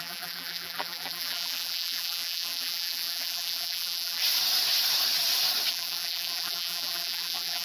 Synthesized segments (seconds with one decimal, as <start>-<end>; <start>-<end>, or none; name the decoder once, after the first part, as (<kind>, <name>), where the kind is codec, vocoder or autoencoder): 0.0-4.2 (vocoder, BigVGAN v2); 5.7-7.6